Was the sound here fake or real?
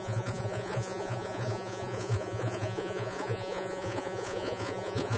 fake